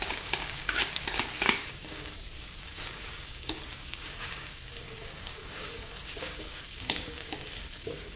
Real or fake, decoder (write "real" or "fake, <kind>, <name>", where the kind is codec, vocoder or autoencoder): fake, codec, DAC